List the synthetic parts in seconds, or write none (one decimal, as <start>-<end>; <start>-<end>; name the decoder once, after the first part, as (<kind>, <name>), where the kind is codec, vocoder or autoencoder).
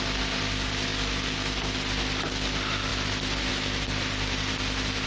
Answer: 2.9-3.5 (vocoder, BigVGAN v2)